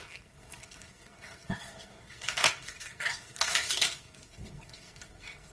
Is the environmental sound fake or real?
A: fake